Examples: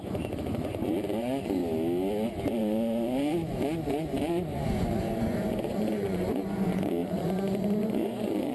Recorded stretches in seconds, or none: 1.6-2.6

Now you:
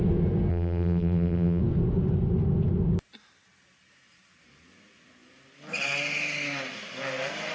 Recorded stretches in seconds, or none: 0.0-0.5; 1.6-7.5

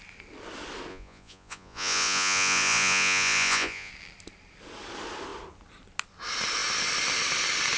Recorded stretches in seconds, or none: 0.0-0.9; 3.9-7.8

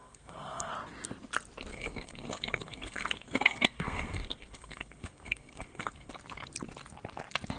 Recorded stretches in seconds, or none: 0.7-1.7; 6.1-7.6

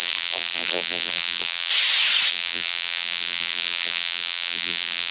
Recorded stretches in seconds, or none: 1.7-2.3

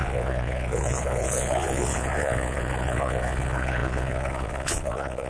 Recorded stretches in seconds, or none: none

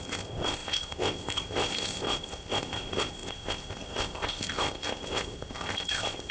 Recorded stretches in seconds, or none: none